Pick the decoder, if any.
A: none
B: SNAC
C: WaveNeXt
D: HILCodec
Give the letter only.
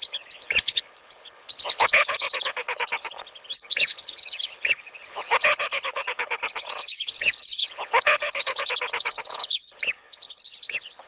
D